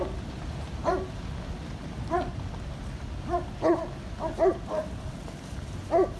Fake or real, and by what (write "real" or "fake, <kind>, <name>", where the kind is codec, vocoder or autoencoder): real